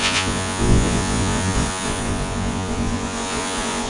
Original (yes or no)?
no